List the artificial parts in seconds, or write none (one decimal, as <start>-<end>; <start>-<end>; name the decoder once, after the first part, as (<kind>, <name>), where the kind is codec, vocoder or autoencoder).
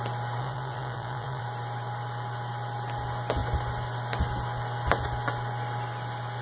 0.4-1.4 (vocoder, Vocos)